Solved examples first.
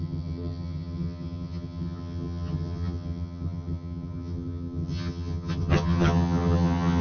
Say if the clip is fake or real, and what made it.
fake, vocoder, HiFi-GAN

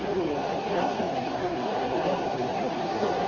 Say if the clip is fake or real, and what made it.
fake, codec, SNAC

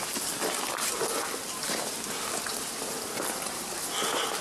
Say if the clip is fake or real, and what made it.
real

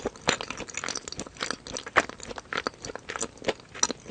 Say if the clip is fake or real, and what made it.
real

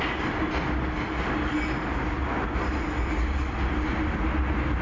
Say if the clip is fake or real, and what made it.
real